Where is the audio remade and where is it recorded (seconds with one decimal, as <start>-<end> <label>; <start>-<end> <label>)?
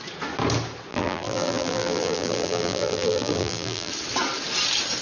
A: 0.0-0.9 recorded; 0.9-3.9 remade; 3.9-5.0 recorded